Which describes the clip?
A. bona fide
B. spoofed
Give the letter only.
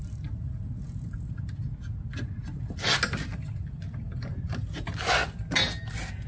A